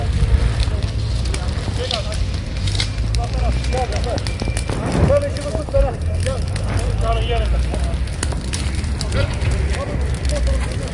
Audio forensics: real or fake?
real